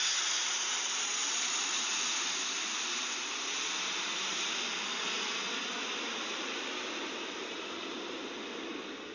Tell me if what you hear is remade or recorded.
recorded